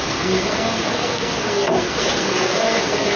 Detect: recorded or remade remade